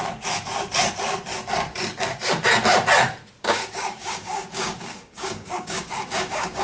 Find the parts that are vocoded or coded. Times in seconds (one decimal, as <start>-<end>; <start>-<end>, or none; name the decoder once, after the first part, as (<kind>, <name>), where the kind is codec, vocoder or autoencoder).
3.4-6.6 (codec, DAC)